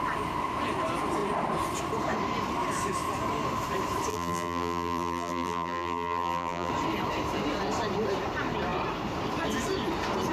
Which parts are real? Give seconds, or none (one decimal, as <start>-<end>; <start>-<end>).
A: 0.0-4.1; 6.7-10.3